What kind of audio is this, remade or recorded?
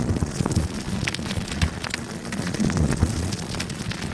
remade